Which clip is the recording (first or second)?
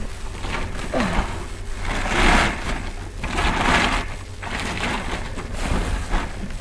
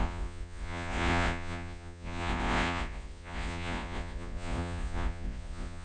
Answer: first